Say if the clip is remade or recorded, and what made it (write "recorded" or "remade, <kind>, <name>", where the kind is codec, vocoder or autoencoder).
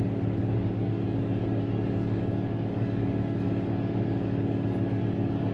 remade, codec, DAC